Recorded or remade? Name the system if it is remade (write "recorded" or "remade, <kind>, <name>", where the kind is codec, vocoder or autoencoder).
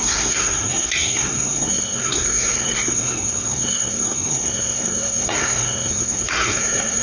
remade, codec, SNAC